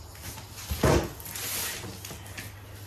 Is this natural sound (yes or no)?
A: yes